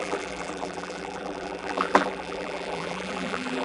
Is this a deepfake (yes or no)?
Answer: yes